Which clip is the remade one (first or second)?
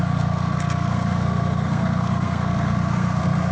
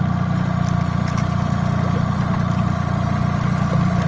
first